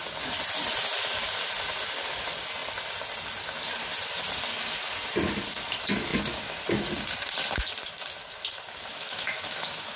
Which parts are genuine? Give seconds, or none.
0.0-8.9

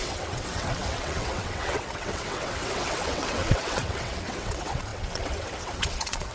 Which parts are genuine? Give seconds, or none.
none

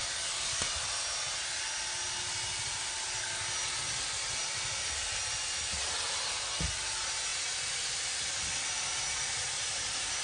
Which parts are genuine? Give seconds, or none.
0.6-10.2

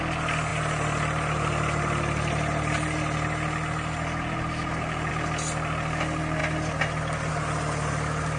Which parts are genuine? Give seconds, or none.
0.0-8.4

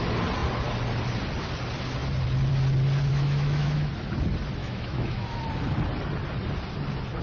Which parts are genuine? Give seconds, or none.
0.0-3.1; 3.9-4.6; 5.4-7.2

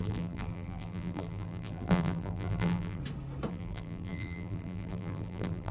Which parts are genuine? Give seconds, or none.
3.0-3.5